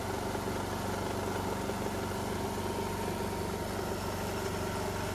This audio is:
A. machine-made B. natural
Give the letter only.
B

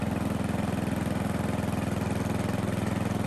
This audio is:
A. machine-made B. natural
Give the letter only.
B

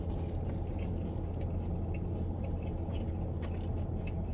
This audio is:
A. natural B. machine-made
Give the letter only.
A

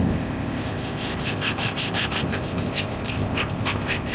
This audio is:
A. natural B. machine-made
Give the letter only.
B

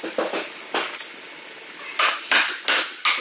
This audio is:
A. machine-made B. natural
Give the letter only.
B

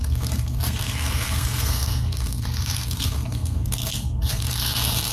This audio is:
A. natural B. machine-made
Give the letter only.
B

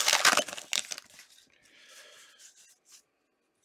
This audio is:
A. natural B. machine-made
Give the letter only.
A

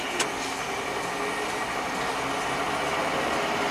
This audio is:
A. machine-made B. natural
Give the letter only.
B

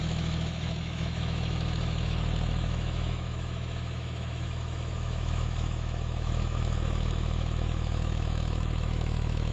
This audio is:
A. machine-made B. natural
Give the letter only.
A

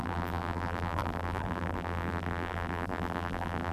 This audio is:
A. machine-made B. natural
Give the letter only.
A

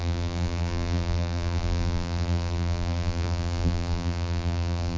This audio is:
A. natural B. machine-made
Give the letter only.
B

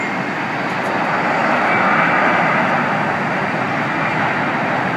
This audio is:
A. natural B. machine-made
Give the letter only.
A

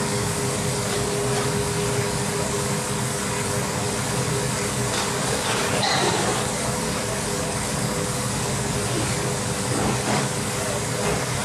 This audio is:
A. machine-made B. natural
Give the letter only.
A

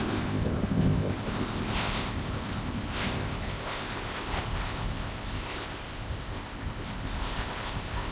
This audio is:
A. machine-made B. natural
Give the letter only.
A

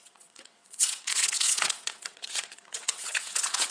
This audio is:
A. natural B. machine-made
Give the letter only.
B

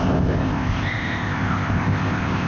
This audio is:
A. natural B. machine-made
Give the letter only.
B